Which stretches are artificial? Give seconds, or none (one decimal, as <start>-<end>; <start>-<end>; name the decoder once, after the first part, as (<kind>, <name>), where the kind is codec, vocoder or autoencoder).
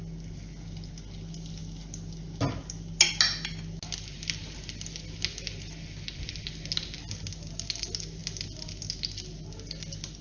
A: none